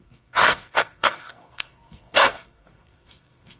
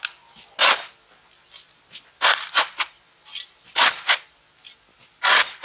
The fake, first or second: first